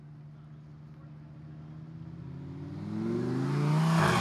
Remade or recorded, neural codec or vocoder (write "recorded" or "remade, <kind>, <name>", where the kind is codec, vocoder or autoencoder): recorded